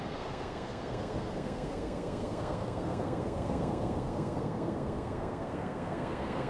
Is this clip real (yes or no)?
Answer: no